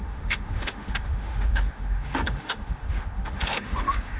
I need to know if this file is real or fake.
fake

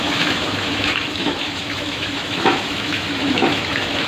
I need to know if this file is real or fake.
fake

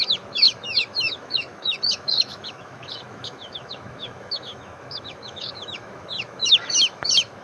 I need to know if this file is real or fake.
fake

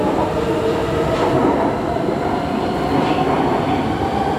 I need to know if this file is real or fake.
real